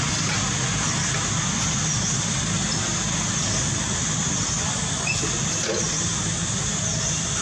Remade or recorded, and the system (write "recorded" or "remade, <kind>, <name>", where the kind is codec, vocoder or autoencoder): recorded